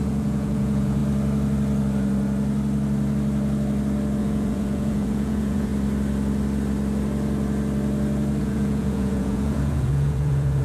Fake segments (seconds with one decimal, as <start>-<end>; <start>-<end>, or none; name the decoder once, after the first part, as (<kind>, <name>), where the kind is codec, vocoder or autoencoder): 0.0-1.0 (vocoder, Vocos); 4.2-5.7; 8.4-10.6